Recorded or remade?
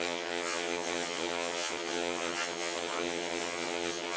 remade